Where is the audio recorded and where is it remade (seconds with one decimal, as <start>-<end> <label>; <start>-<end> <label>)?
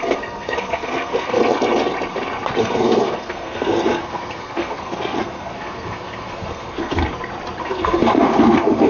0.0-1.4 remade; 1.4-2.6 recorded; 2.6-7.0 remade; 7.0-7.6 recorded; 7.6-8.9 remade